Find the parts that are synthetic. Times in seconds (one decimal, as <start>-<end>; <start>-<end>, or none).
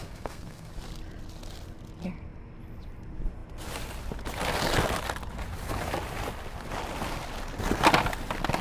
0.0-0.7